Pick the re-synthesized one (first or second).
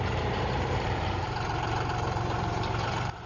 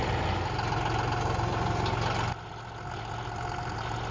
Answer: first